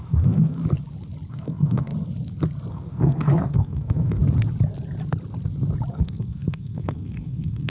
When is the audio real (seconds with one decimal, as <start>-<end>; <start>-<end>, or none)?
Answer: 0.6-1.3; 1.9-2.7; 4.2-5.9